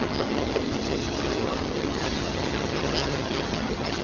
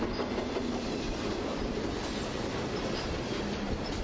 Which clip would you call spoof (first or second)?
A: first